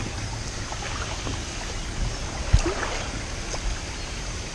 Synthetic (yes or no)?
yes